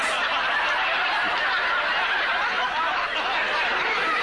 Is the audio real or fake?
real